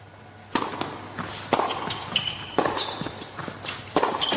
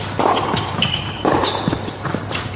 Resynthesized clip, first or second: second